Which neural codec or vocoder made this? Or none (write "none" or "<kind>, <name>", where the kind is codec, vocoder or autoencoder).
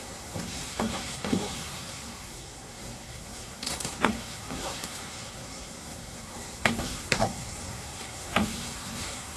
codec, SNAC